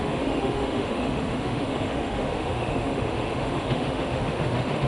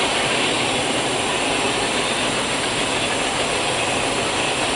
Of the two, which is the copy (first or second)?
first